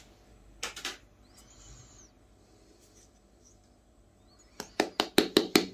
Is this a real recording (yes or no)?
yes